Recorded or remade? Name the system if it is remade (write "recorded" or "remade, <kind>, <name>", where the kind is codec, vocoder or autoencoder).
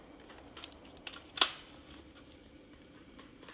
recorded